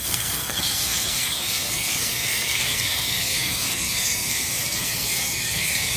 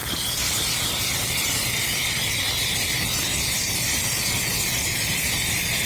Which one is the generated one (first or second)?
first